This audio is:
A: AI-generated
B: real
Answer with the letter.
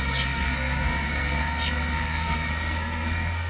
A